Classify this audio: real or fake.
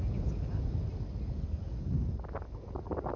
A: real